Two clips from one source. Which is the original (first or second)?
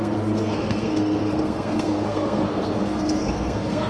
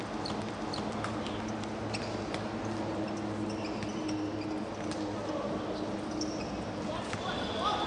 second